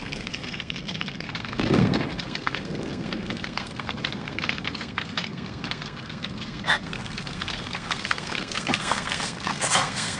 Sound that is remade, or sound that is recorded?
remade